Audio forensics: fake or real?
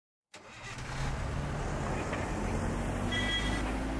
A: real